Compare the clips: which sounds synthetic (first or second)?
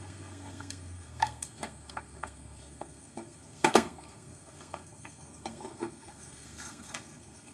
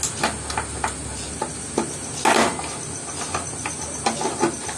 first